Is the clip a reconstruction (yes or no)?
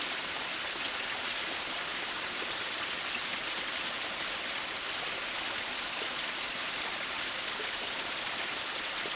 no